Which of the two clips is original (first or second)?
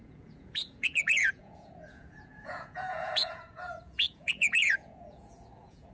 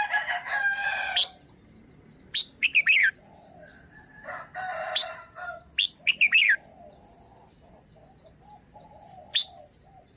second